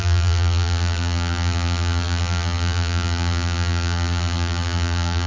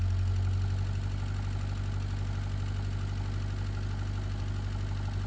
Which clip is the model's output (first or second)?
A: first